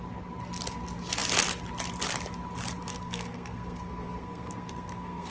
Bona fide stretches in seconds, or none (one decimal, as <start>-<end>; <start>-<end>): 0.0-2.9